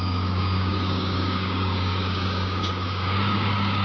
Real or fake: fake